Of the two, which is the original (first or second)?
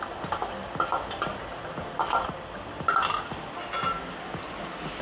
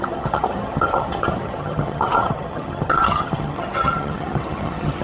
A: first